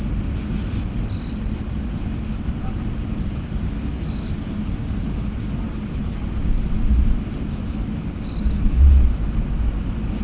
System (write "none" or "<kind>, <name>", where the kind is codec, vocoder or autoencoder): none